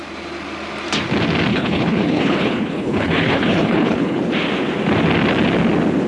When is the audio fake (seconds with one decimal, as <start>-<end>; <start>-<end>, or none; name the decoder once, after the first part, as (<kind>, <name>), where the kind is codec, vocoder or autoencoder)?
1.5-4.2 (codec, HILCodec)